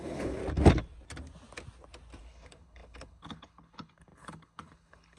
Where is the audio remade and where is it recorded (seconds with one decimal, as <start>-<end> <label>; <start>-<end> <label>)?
0.0-0.4 remade; 0.4-2.2 recorded; 2.2-5.2 remade